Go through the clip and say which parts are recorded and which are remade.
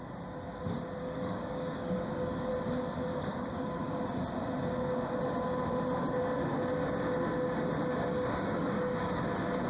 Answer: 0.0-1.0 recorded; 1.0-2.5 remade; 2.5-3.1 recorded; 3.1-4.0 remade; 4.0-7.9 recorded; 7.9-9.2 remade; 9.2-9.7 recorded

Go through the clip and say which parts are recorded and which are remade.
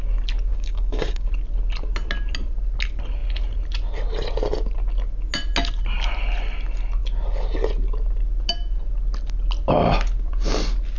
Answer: 0.0-0.5 recorded; 0.5-1.3 remade; 1.3-11.0 recorded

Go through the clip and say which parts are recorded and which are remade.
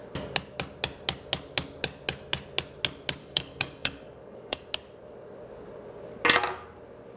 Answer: 0.0-3.2 recorded; 3.2-4.6 remade; 4.6-7.2 recorded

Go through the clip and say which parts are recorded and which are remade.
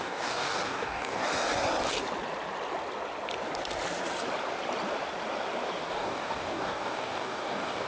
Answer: 0.0-1.2 remade; 1.2-5.9 recorded; 5.9-7.9 remade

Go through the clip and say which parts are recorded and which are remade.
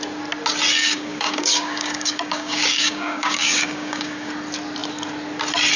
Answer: 0.0-0.8 recorded; 0.8-4.3 remade; 4.3-5.8 recorded